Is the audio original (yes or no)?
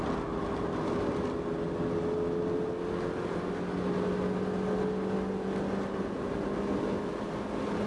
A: yes